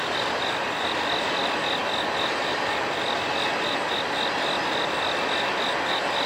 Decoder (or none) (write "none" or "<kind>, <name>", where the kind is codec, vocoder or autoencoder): none